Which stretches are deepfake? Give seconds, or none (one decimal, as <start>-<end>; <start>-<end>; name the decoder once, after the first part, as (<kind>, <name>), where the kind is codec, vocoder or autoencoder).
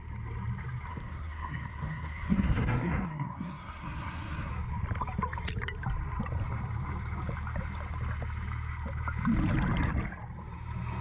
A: 0.9-4.5 (codec, SNAC)